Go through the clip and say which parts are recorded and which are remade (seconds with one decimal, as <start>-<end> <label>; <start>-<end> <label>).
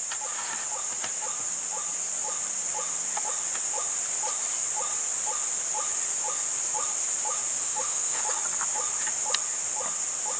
0.0-7.6 recorded; 7.6-8.2 remade; 8.2-10.4 recorded